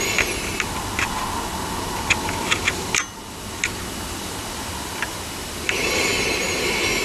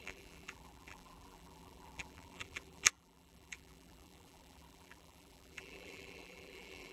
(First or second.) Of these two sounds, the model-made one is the second